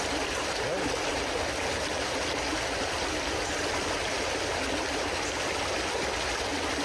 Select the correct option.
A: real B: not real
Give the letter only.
A